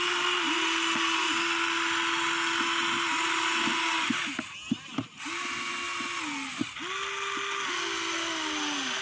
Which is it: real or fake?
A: real